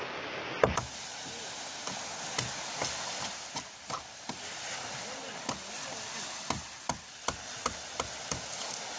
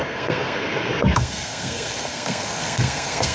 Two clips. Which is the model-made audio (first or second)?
second